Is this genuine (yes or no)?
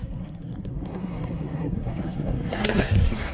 no